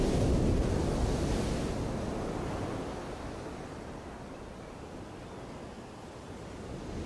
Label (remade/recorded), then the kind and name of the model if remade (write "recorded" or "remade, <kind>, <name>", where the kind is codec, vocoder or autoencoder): recorded